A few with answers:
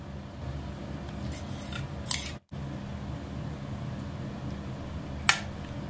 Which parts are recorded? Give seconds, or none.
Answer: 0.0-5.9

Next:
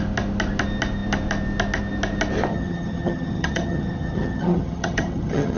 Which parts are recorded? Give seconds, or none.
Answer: 0.0-2.5

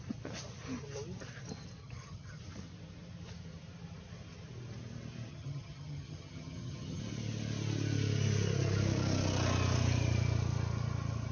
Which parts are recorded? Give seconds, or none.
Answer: 0.0-1.8; 2.4-5.3; 7.0-11.3